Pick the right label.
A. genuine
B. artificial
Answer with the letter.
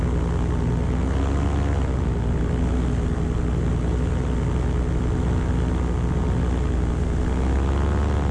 A